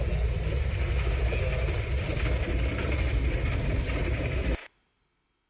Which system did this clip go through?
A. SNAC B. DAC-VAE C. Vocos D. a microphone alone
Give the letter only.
D